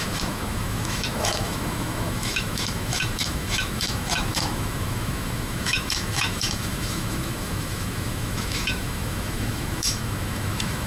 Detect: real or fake fake